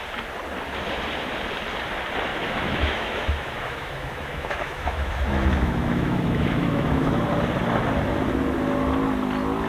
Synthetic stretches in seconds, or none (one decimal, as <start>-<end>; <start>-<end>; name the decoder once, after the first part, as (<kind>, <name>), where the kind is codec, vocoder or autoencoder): 2.3-7.3 (autoencoder, DAC-VAE)